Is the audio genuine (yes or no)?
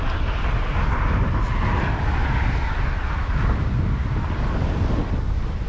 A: yes